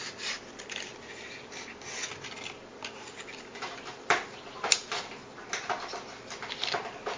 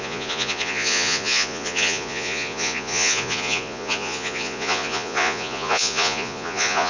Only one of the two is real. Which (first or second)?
first